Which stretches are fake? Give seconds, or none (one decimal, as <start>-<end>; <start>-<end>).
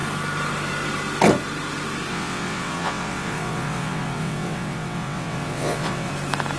2.1-6.1